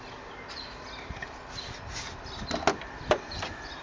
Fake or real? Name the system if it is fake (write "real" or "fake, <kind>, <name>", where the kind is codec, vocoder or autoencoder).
real